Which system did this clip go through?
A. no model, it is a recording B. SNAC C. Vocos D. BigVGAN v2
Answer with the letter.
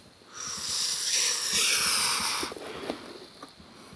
A